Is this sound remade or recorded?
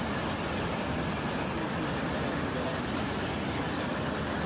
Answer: recorded